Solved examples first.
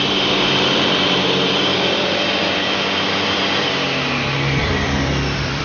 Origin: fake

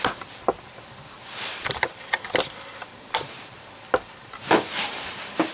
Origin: fake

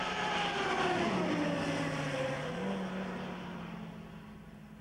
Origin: real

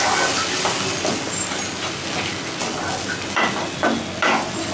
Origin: real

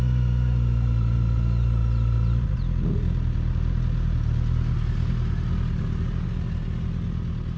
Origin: real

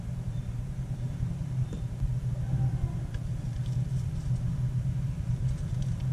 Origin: real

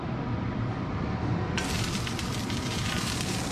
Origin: fake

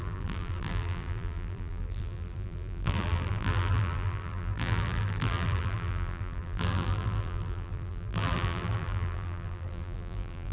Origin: fake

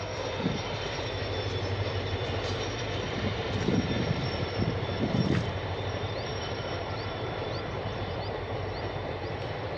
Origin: fake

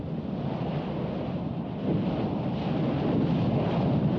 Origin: real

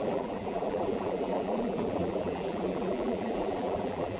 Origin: fake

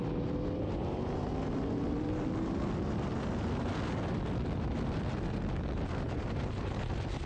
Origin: real